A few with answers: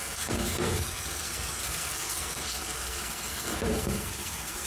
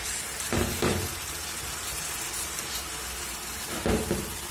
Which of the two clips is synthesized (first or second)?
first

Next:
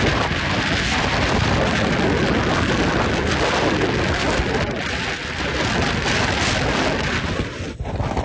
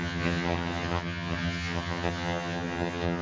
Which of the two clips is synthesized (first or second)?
second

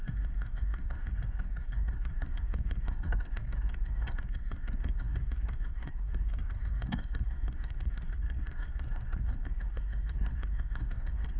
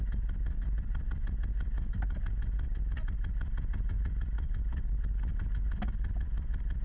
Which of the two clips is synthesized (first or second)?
first